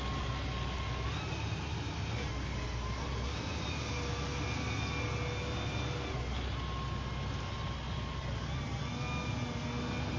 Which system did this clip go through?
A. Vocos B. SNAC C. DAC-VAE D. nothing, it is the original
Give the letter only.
D